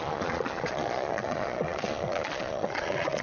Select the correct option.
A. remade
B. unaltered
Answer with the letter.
A